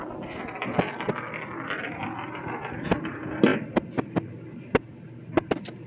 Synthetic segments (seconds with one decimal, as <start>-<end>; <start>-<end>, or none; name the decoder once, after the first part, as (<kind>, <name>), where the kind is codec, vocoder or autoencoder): none